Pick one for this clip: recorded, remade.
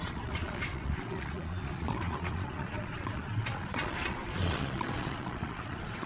remade